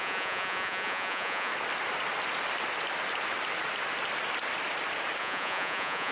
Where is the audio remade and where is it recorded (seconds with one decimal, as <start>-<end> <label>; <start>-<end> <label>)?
0.0-1.5 remade; 1.5-5.2 recorded; 5.2-6.1 remade